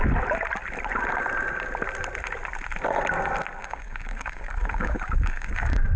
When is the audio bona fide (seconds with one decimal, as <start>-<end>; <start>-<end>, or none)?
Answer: 0.0-3.6